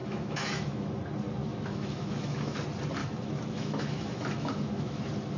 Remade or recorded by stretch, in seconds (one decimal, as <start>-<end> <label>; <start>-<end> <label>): 0.0-0.9 remade; 0.9-1.4 recorded; 1.4-2.6 remade; 2.6-3.0 recorded; 3.0-5.0 remade; 5.0-5.4 recorded

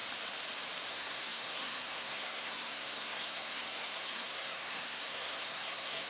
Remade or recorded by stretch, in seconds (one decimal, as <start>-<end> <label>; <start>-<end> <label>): 0.0-0.9 recorded; 0.9-6.1 remade